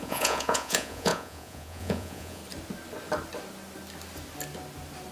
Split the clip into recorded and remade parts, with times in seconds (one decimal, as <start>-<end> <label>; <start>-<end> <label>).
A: 0.0-2.4 remade; 2.4-5.1 recorded